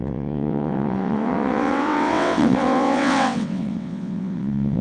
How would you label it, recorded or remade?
remade